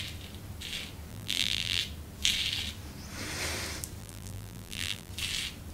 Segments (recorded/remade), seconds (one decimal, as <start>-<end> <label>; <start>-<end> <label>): 0.0-1.1 recorded; 1.1-1.8 remade; 1.8-4.0 recorded; 4.0-5.1 remade; 5.1-5.7 recorded